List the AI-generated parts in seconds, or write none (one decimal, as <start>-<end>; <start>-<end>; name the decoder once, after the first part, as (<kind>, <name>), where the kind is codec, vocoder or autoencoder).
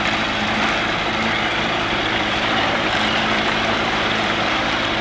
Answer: 1.5-4.5 (vocoder, BigVGAN v2)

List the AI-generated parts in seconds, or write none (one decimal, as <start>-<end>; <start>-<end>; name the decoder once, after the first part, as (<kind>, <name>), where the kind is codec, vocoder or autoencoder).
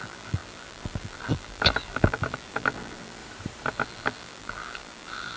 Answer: 0.0-3.2 (vocoder, BigVGAN v2); 3.7-5.4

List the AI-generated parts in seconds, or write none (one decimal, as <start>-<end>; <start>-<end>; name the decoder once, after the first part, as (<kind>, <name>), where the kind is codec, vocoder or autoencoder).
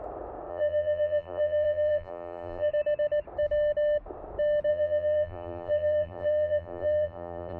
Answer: 0.5-2.7 (vocoder, BigVGAN v2); 4.7-7.6